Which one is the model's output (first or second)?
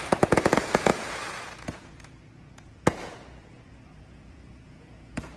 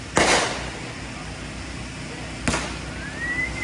first